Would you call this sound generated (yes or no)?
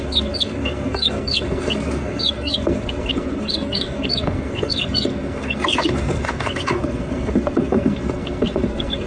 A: yes